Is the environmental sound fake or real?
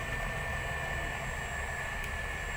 real